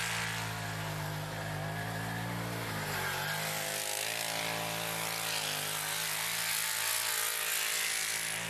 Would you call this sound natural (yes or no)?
yes